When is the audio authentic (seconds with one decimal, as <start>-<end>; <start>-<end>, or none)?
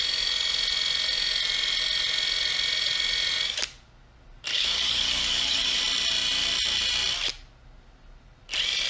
0.0-4.5; 5.8-8.9